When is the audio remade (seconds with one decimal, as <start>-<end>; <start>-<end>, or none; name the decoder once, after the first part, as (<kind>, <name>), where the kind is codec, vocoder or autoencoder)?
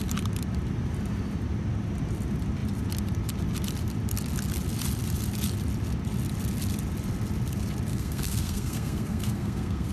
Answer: 7.9-9.9 (codec, SNAC)